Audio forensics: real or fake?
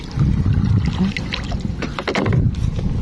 real